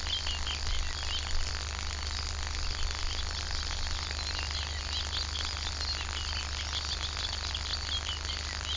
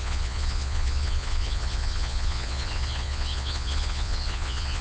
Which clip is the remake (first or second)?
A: second